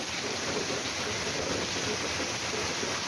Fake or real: fake